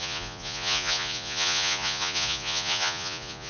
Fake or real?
fake